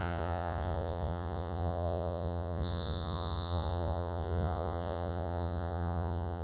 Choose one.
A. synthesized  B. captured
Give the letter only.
A